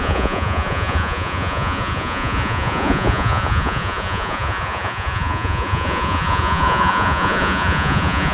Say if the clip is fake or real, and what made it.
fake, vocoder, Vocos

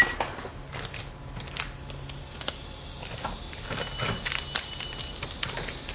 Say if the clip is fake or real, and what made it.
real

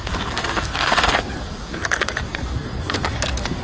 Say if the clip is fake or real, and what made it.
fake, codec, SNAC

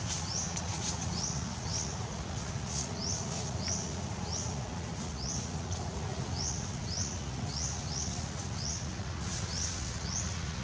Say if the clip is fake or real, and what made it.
fake, vocoder, Vocos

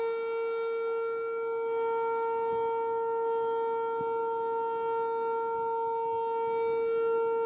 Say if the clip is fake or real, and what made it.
real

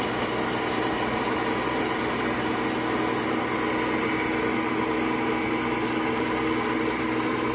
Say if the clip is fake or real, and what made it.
real